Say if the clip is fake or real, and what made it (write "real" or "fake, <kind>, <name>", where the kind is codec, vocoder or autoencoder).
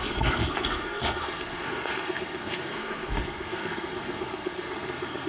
fake, codec, SNAC